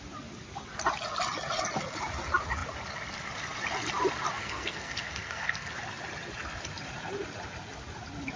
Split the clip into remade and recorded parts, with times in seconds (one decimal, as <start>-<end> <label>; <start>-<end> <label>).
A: 0.0-4.4 recorded; 4.4-5.7 remade; 5.7-8.4 recorded